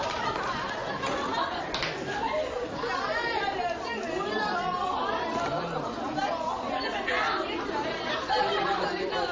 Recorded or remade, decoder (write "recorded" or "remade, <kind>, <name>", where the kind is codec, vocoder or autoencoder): recorded